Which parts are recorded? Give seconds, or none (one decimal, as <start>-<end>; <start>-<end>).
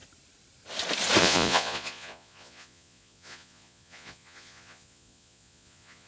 0.0-1.2